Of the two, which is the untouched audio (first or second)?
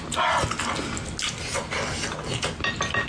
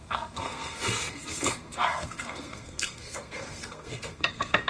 first